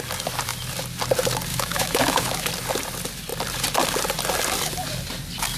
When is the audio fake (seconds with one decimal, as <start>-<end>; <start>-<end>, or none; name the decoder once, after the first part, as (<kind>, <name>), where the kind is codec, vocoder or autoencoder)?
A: 1.5-2.5 (autoencoder, DAC-VAE)